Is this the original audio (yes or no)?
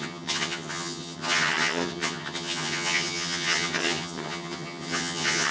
no